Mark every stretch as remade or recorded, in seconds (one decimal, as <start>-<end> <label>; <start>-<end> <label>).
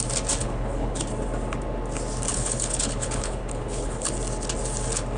0.0-0.4 recorded; 0.4-1.0 remade; 1.0-2.3 recorded; 2.3-4.1 remade; 4.1-5.2 recorded